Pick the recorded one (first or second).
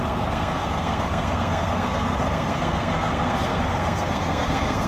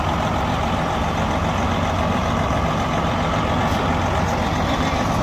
second